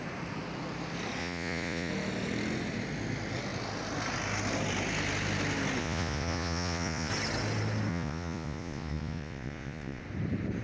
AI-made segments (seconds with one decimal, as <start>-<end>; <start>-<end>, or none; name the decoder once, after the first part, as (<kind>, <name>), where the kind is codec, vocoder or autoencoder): 1.2-1.9 (vocoder, Vocos); 5.8-7.1; 7.9-10.0